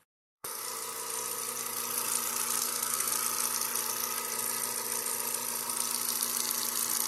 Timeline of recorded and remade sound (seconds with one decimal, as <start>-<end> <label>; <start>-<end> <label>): 0.0-0.6 remade; 0.6-2.6 recorded; 2.6-3.1 remade; 3.1-7.1 recorded